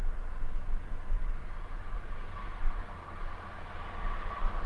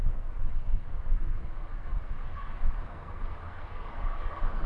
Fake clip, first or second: second